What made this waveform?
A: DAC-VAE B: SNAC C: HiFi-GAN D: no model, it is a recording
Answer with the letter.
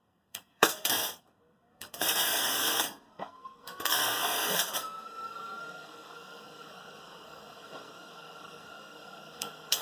B